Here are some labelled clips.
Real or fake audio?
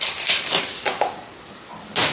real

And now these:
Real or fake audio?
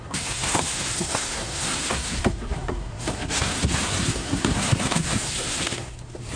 fake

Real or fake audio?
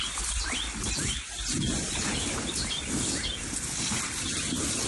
real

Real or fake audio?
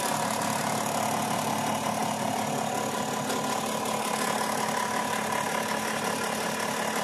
real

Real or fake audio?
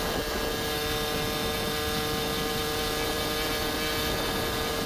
real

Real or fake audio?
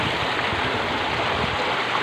real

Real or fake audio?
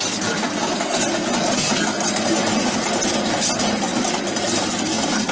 real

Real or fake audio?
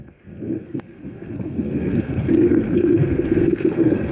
fake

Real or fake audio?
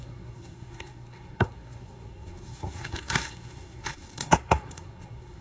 fake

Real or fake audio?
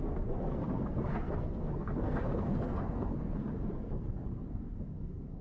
fake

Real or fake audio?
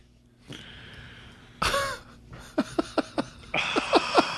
real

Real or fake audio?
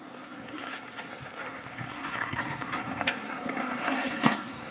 fake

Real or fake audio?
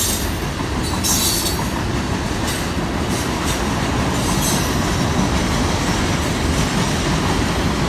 real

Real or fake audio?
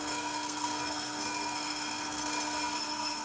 fake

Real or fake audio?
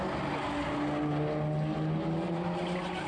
real